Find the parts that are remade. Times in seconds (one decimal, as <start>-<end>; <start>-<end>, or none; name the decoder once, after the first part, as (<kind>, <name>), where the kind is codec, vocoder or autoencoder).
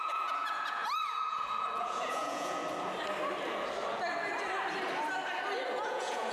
0.0-2.6 (vocoder, Vocos); 5.7-6.3